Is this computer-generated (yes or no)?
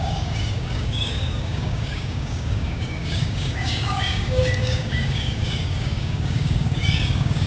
yes